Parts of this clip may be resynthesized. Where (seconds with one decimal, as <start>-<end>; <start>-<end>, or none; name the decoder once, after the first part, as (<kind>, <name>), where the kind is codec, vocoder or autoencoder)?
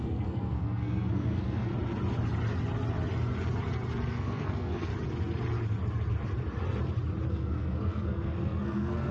0.0-1.7 (codec, SNAC); 4.1-4.9; 7.3-9.1